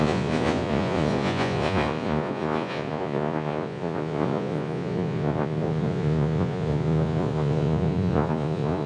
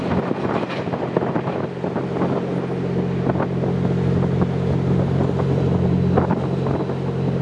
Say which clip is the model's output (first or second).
first